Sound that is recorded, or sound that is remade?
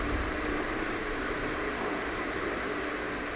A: remade